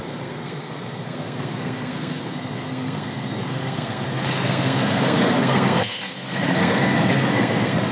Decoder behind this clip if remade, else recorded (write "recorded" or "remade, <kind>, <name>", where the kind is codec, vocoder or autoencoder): remade, codec, SNAC